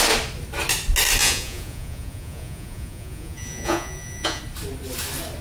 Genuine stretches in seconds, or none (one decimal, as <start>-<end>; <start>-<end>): 0.0-1.2; 4.4-5.4